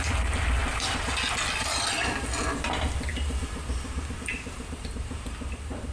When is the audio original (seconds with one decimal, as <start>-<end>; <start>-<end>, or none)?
0.0-0.6; 1.2-3.1; 5.1-5.9